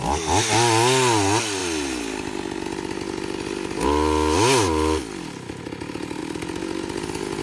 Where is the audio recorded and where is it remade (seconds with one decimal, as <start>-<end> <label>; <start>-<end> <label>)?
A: 0.0-7.4 recorded